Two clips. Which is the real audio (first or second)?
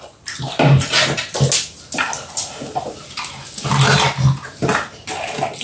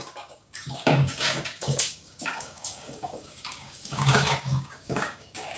first